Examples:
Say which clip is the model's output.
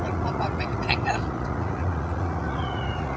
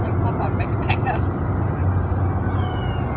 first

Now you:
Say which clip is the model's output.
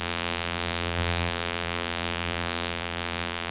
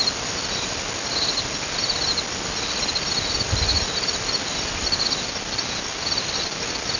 first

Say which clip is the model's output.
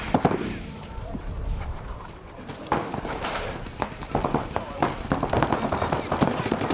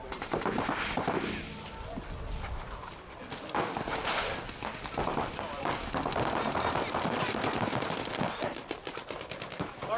first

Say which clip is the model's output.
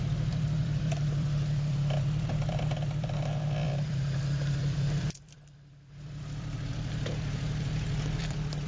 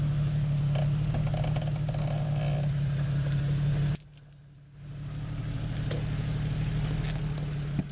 first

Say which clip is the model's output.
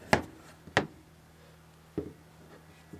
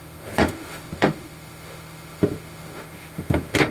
second